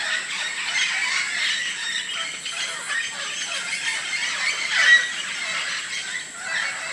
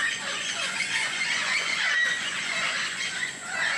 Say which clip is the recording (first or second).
first